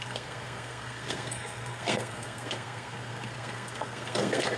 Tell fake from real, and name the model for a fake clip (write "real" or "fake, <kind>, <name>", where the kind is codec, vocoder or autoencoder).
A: fake, codec, SNAC